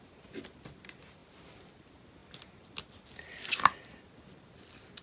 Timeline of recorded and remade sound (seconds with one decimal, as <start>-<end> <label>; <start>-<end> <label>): 0.0-5.0 recorded